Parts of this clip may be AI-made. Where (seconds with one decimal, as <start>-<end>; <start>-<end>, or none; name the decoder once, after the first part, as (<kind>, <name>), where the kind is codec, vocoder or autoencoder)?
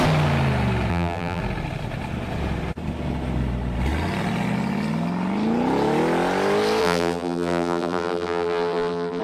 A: 0.9-1.4 (vocoder, BigVGAN v2); 6.8-9.2